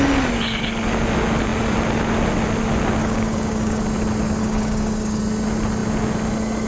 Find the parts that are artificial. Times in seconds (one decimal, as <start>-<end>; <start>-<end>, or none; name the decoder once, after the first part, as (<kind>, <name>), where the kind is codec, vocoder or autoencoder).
3.0-3.8 (codec, DAC); 4.4-5.2